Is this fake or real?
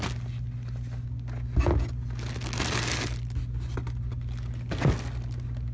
real